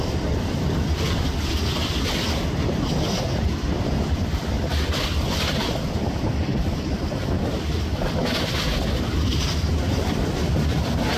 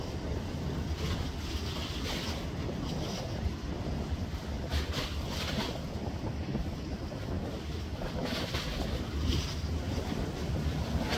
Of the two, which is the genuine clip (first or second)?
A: second